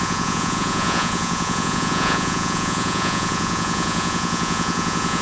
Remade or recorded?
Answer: remade